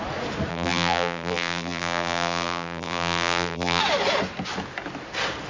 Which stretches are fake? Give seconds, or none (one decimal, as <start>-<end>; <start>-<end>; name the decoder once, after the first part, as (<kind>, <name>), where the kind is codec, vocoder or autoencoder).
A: 0.5-3.8 (vocoder, BigVGAN v2)